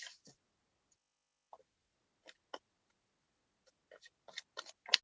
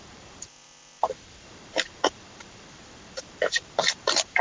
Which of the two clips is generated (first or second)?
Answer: second